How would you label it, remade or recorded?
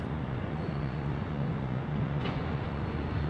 remade